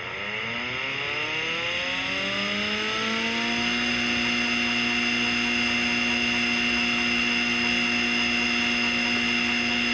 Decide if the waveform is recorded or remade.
recorded